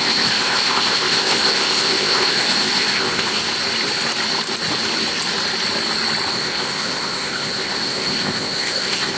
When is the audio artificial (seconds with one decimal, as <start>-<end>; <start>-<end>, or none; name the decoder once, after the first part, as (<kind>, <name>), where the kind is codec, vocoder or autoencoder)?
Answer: 0.0-3.4 (codec, ZipCodec); 6.3-9.2